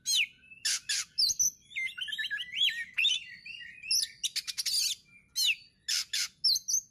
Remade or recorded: recorded